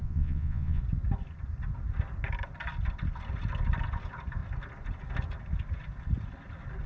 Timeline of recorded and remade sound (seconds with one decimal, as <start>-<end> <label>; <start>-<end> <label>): 0.0-0.8 remade; 0.8-6.9 recorded